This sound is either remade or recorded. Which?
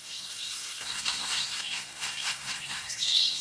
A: remade